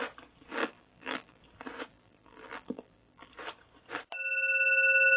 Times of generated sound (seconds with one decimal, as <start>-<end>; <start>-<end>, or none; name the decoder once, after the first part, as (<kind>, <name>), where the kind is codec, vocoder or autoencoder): 0.6-1.4 (vocoder, BigVGAN v2); 1.9-3.3